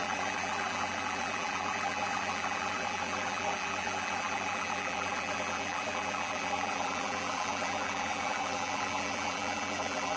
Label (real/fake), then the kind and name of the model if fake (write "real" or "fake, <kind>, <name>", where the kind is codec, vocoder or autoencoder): fake, vocoder, BigVGAN v2